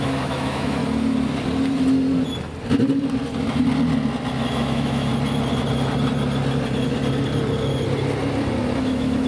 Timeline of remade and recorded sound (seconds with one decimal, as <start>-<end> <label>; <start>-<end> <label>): 0.0-0.8 remade; 0.8-4.5 recorded; 4.5-5.1 remade; 5.1-8.8 recorded; 8.8-9.3 remade